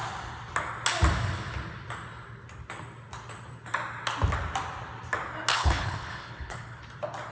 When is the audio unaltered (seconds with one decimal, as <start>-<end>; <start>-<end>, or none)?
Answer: 0.0-5.5; 6.8-7.3